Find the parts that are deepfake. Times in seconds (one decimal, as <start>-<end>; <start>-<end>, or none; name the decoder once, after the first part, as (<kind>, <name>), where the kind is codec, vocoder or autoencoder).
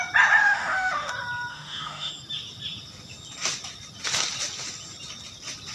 0.4-1.1 (autoencoder, DAC-VAE); 1.5-2.1